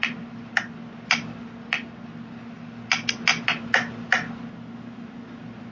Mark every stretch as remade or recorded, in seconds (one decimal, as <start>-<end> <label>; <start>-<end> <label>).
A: 0.0-5.7 recorded